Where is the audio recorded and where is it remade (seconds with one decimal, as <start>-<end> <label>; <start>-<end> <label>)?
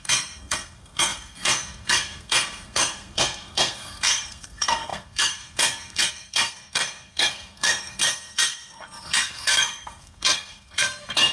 0.0-11.3 remade